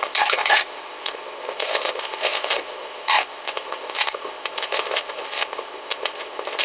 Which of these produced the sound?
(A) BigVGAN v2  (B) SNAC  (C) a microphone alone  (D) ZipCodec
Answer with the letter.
D